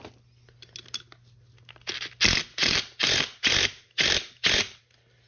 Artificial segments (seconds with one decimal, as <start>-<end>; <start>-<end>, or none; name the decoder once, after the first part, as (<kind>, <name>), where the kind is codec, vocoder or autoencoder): 2.6-4.8 (vocoder, BigVGAN v2)